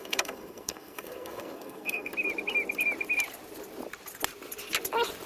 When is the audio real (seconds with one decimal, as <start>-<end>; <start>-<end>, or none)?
2.1-5.3